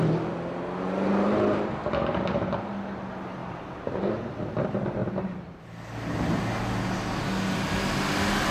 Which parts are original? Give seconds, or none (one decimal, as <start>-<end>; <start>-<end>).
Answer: 0.0-3.4; 4.2-5.0; 5.6-8.5